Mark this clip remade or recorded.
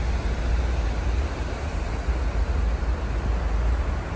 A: recorded